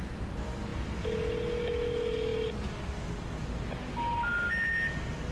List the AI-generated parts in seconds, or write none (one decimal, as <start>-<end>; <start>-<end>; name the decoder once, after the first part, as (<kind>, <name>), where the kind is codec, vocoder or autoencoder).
none